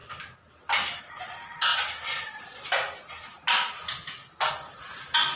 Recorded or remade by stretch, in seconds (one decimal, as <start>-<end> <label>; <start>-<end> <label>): 0.0-1.0 remade; 1.0-5.4 recorded